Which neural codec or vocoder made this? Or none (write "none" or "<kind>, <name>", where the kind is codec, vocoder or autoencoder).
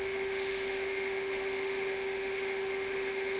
autoencoder, DAC-VAE